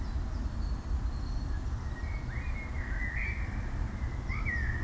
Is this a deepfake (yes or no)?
no